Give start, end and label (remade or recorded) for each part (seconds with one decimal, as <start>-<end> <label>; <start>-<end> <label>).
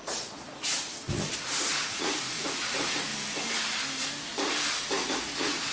0.0-3.1 remade; 3.1-5.1 recorded; 5.1-5.7 remade